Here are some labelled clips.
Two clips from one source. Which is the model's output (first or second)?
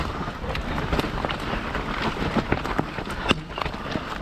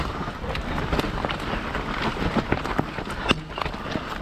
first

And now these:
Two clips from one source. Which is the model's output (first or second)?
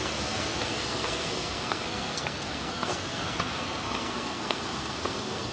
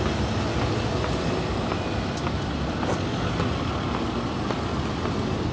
first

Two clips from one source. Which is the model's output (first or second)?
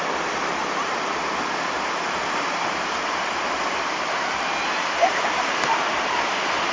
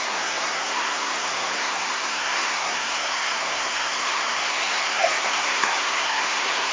second